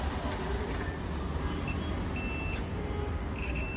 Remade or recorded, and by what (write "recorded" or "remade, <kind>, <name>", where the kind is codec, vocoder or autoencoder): recorded